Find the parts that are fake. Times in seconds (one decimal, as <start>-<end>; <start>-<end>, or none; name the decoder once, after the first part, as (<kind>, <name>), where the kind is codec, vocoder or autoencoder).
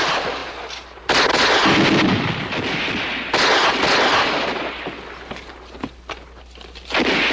none